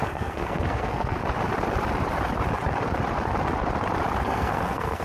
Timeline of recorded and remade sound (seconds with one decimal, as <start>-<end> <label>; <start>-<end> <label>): 0.0-1.2 remade; 1.2-4.2 recorded; 4.2-5.0 remade